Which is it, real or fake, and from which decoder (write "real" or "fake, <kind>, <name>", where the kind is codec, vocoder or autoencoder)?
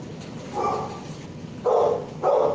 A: real